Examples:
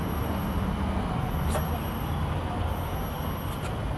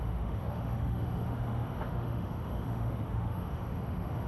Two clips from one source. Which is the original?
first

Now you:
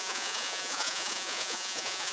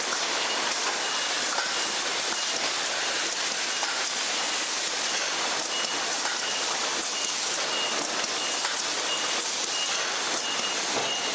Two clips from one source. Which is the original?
second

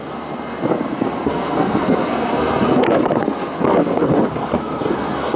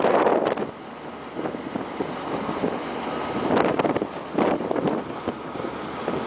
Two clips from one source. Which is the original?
second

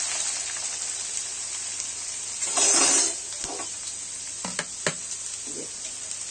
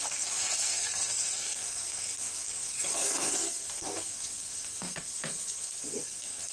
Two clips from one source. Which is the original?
first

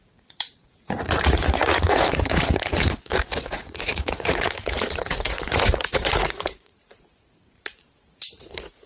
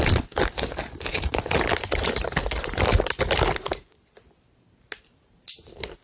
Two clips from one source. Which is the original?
second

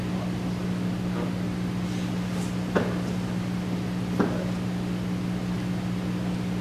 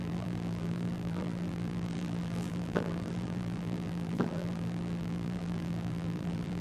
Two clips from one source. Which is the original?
first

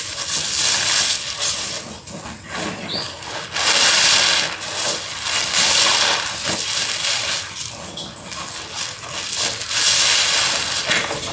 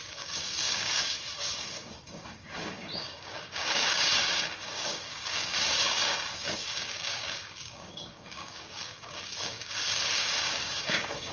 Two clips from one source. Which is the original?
first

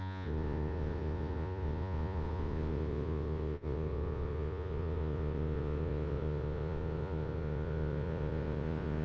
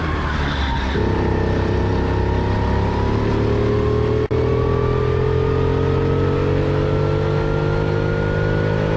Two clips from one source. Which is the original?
second